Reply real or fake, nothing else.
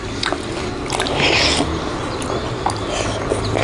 real